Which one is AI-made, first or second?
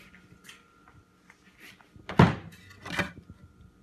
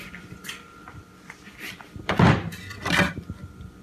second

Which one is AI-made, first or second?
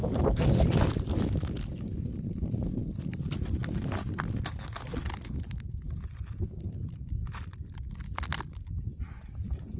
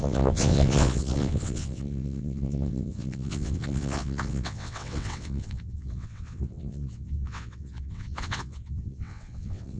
second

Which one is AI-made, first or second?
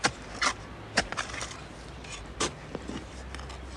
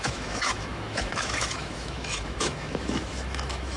second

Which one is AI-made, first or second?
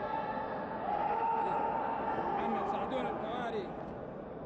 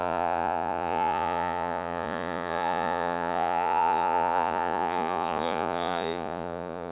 second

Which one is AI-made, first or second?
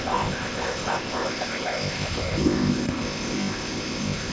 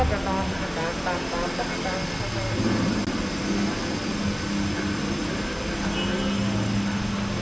first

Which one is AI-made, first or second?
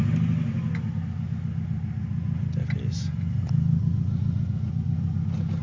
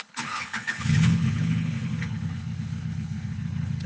second